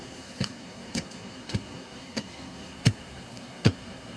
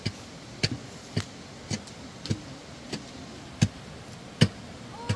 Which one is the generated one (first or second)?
first